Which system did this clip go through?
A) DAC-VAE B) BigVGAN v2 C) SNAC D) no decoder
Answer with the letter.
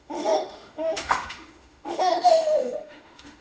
A